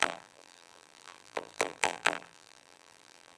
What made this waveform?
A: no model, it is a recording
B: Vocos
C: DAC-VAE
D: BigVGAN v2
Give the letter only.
D